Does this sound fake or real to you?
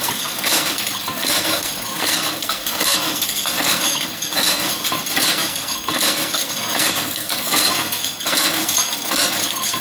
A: fake